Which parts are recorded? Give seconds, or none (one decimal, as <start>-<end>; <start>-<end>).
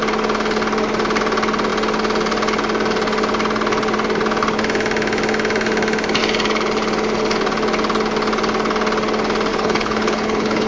0.0-9.5